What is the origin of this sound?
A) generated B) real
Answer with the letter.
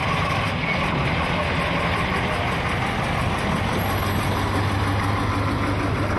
B